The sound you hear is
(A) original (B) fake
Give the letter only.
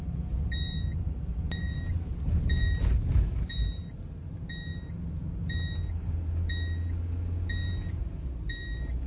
A